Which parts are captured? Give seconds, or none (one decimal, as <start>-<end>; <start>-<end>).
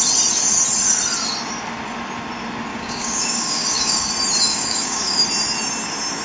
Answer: 0.0-2.7; 4.1-4.5; 5.2-6.2